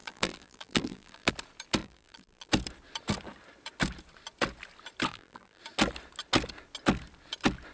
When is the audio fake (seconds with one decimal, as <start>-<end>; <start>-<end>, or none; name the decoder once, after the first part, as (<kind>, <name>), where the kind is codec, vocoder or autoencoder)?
0.0-1.3 (vocoder, BigVGAN v2); 1.8-2.5; 5.1-5.6